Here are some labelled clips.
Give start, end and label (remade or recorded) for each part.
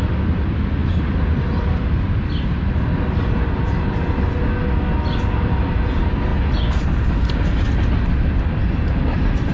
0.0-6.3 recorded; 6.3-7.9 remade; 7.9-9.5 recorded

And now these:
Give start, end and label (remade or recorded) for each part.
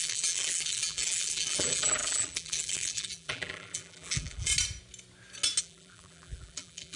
0.0-4.5 remade; 4.5-5.6 recorded; 5.6-7.0 remade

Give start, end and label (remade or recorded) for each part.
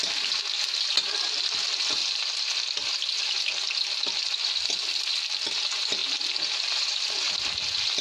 0.0-2.0 recorded; 2.0-4.8 remade; 4.8-6.0 recorded; 6.0-7.1 remade; 7.1-8.0 recorded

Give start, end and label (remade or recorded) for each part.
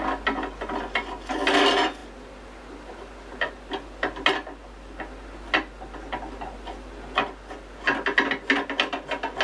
0.0-9.4 recorded